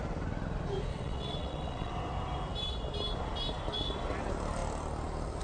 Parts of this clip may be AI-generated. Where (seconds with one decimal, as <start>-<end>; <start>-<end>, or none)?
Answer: 0.9-1.9